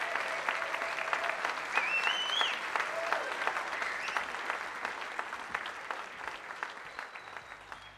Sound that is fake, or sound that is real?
real